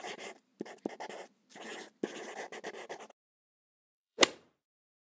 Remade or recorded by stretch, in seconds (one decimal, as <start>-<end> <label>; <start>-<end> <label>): 0.0-0.5 remade; 0.5-3.6 recorded; 3.6-5.1 remade